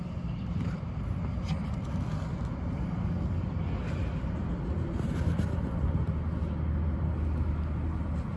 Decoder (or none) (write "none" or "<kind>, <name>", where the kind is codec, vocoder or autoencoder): none